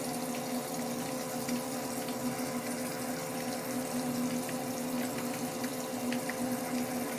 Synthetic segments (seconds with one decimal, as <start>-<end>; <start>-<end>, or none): none